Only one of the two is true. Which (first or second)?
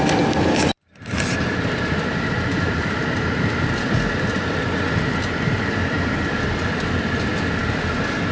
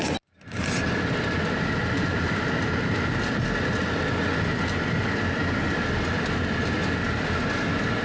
second